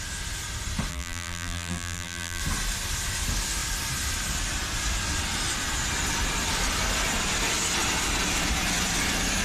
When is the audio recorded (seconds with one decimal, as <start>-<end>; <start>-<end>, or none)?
0.0-0.9; 2.4-9.4